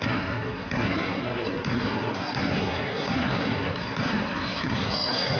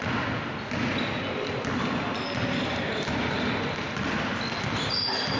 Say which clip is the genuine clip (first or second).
second